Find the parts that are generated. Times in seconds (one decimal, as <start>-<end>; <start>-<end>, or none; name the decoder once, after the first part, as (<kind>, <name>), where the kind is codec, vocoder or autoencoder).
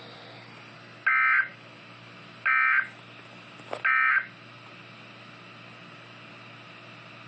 none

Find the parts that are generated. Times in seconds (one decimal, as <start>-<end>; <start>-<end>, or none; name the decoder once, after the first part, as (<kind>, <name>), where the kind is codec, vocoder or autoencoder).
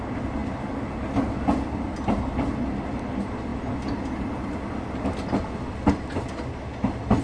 none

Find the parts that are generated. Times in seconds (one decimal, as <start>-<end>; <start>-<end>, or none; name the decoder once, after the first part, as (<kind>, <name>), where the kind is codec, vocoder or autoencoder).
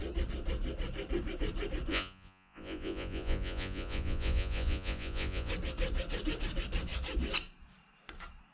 1.9-5.5 (vocoder, Vocos)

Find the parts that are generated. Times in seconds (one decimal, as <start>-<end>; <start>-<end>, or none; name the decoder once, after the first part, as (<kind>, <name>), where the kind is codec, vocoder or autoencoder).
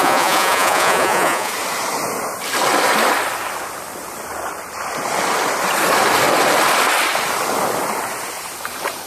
0.0-1.5 (vocoder, Vocos)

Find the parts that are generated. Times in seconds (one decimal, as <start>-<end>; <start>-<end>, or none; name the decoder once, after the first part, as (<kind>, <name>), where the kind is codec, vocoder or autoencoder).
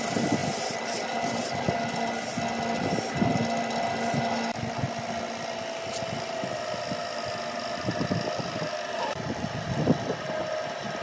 0.4-1.7 (vocoder, BigVGAN v2); 7.0-10.4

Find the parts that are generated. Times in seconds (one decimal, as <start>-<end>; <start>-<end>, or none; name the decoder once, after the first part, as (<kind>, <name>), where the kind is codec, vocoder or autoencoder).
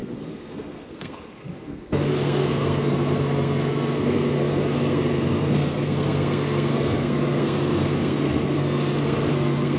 0.0-9.8 (codec, SNAC)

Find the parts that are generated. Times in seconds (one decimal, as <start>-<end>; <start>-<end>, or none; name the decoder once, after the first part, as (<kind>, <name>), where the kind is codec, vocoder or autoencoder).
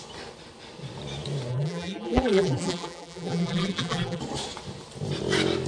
1.5-4.2 (vocoder, BigVGAN v2)